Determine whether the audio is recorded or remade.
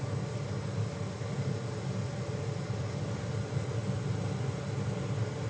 recorded